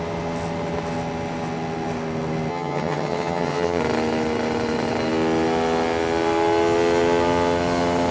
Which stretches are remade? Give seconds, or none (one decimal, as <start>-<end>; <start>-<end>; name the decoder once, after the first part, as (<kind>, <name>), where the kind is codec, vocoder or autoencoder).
2.5-3.8 (vocoder, HiFi-GAN)